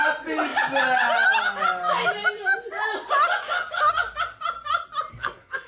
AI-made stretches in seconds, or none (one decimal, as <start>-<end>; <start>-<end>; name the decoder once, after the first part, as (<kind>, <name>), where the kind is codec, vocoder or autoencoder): 5.1-5.7 (codec, SNAC)